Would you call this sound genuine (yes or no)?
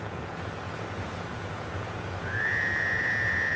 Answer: no